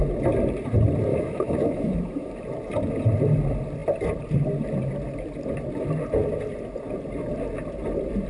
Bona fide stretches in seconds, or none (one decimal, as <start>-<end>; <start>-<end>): 0.0-1.1; 2.3-8.3